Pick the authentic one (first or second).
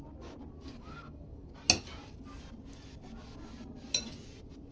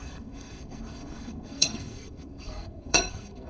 first